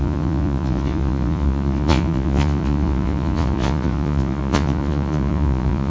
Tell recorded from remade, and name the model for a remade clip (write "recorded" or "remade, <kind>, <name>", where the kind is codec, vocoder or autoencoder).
remade, vocoder, Vocos